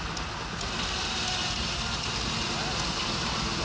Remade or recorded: recorded